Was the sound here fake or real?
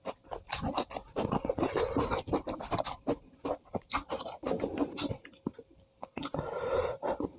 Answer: fake